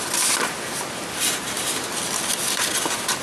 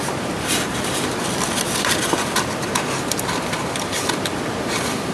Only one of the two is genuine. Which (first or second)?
first